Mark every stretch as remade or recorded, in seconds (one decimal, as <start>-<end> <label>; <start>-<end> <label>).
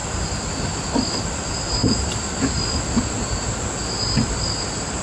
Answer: 0.0-5.0 recorded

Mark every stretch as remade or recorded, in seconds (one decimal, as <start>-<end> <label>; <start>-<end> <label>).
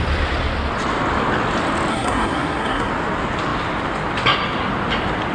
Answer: 0.0-1.9 recorded; 1.9-2.9 remade; 2.9-5.3 recorded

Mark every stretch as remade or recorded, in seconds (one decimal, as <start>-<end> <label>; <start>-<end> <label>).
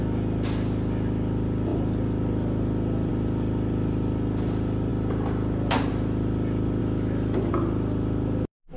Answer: 0.0-6.8 recorded; 6.8-7.5 remade; 7.5-8.8 recorded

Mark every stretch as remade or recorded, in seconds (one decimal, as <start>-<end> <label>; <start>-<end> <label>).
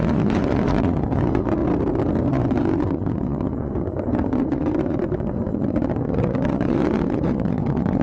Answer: 0.0-1.6 remade; 1.6-2.3 recorded; 2.3-8.0 remade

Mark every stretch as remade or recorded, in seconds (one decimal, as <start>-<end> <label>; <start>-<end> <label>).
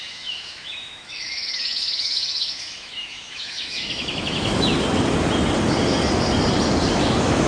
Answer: 0.0-4.7 remade; 4.7-6.9 recorded; 6.9-7.5 remade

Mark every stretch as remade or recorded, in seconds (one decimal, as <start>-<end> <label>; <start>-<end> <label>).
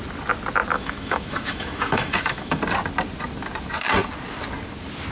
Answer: 0.0-0.7 recorded; 0.7-2.6 remade; 2.6-5.1 recorded